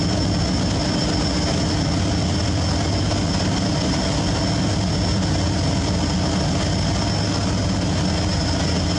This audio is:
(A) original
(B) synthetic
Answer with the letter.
A